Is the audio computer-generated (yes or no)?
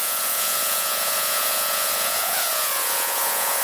yes